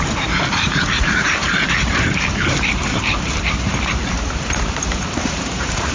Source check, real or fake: fake